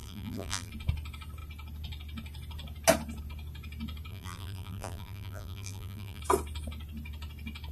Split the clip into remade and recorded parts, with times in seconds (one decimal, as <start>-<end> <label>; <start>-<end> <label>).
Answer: 0.0-0.7 remade; 0.7-4.1 recorded; 4.1-6.2 remade; 6.2-7.7 recorded